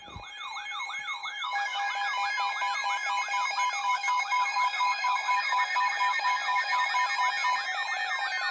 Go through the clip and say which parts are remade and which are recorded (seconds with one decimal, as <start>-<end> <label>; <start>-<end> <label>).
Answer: 0.0-1.2 recorded; 1.2-1.9 remade; 1.9-3.8 recorded; 3.8-6.9 remade; 6.9-8.5 recorded